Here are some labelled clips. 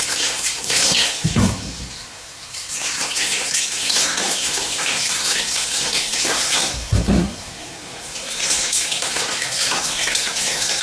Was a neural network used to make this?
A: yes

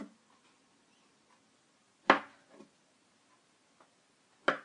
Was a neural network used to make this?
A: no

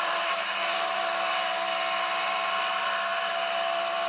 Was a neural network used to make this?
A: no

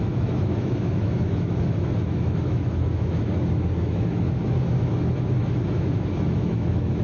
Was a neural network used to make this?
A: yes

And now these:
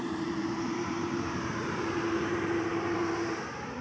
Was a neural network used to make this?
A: yes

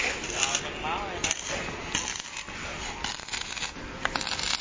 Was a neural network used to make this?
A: no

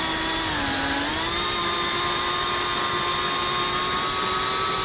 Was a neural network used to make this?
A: no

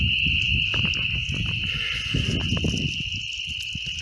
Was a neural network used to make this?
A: no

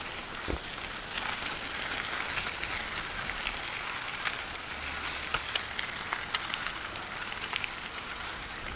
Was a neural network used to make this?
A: no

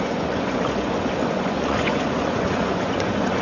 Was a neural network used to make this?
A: yes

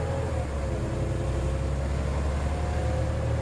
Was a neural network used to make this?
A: no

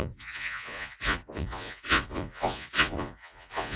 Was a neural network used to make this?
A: yes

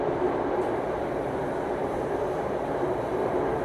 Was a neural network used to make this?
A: yes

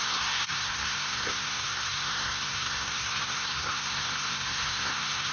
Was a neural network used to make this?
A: yes